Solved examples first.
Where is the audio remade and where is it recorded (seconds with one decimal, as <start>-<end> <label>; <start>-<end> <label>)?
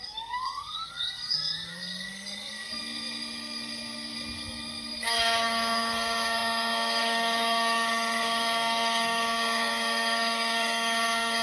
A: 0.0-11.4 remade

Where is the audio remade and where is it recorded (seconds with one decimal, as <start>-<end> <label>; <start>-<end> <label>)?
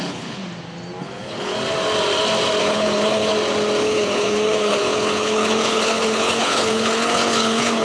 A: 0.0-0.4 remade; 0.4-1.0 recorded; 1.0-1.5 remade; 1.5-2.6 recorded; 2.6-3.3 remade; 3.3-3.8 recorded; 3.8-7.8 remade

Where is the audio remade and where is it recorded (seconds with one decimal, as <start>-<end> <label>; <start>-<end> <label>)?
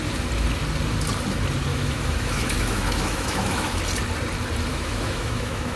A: 0.0-1.7 recorded; 1.7-3.8 remade; 3.8-4.7 recorded; 4.7-5.8 remade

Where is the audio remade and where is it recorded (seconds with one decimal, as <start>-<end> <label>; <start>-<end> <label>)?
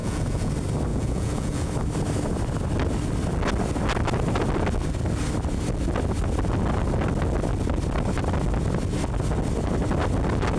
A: 0.0-0.5 remade; 0.5-0.9 recorded; 0.9-1.7 remade; 1.7-10.6 recorded